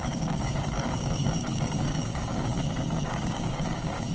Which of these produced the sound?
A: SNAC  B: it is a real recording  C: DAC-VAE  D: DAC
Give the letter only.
D